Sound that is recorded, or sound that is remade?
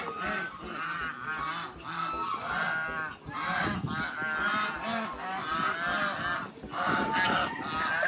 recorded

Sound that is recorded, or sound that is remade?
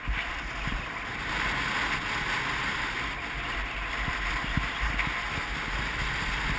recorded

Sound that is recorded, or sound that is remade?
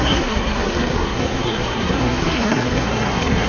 remade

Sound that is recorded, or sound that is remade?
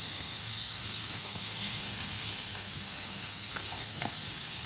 remade